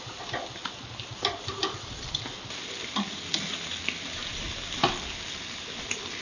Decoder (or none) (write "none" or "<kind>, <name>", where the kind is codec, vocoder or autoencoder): none